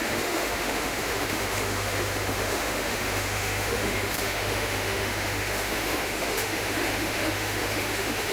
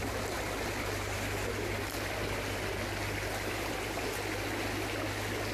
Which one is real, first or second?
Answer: second